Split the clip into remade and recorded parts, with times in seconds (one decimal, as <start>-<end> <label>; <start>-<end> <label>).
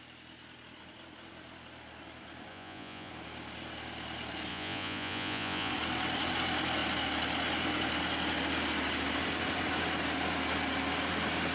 0.0-2.5 recorded; 2.5-3.1 remade; 3.1-4.5 recorded; 4.5-5.7 remade; 5.7-11.5 recorded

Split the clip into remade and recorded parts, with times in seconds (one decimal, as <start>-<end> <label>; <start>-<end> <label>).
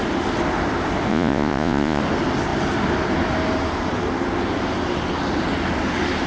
0.0-1.1 recorded; 1.1-2.0 remade; 2.0-6.3 recorded